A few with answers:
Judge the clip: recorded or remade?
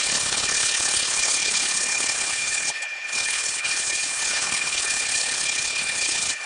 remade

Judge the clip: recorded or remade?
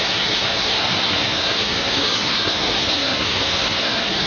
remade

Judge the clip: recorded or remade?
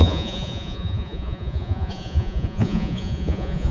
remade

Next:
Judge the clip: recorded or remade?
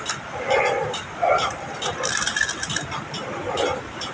recorded